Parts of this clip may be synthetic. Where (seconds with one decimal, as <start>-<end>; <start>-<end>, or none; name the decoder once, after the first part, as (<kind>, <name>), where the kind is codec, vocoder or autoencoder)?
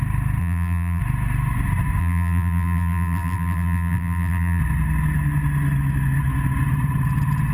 0.4-1.0 (vocoder, BigVGAN v2); 2.0-4.6